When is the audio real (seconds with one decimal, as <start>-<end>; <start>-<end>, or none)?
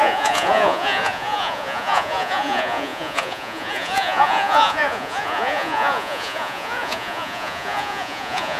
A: none